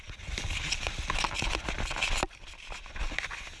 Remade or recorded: recorded